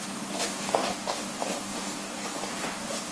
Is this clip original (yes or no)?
no